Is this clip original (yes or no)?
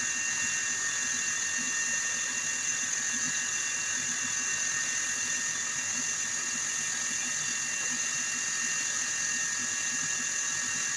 yes